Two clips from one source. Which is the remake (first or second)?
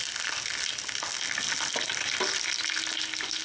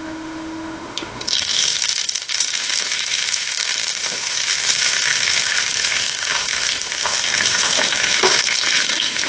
second